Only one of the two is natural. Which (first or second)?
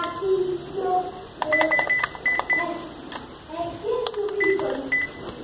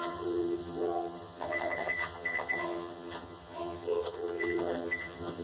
first